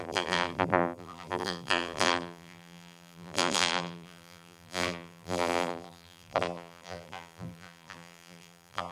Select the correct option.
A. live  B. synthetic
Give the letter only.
B